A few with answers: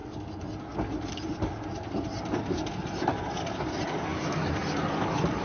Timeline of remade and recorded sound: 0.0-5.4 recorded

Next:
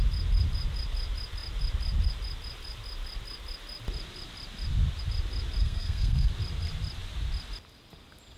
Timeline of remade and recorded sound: 0.0-5.6 recorded; 5.6-6.3 remade; 6.3-8.4 recorded